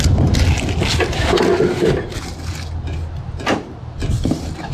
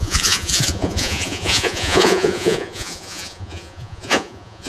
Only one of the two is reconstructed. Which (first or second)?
second